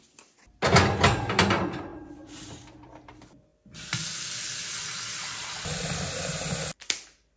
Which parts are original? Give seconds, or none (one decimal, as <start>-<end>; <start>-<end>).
0.0-1.9; 2.4-7.4